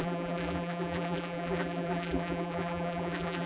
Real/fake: fake